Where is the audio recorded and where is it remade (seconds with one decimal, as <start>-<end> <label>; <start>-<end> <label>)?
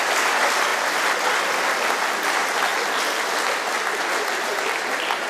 0.0-5.3 recorded